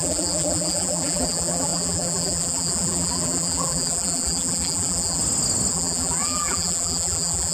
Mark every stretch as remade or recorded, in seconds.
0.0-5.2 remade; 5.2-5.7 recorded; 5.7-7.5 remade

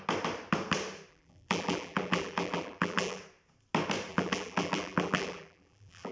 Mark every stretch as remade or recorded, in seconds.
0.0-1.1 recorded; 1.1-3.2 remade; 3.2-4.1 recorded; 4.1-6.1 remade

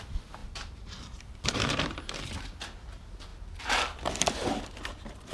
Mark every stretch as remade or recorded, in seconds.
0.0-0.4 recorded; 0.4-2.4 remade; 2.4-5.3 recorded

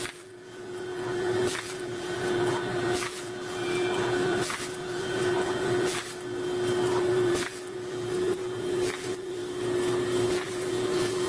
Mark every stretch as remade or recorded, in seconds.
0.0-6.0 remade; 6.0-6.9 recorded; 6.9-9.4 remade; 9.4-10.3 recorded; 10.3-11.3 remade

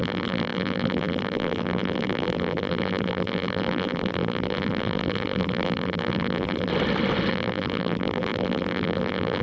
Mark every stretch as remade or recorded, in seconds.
0.0-6.7 remade; 6.7-7.3 recorded; 7.3-9.4 remade

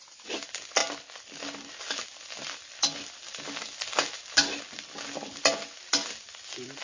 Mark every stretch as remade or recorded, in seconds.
0.0-6.8 recorded

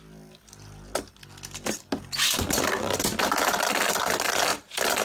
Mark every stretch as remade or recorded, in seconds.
0.0-5.0 recorded

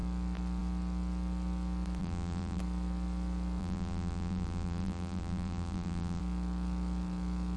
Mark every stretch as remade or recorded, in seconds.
0.0-2.0 recorded; 2.0-2.6 remade; 2.6-3.6 recorded; 3.6-6.2 remade; 6.2-7.6 recorded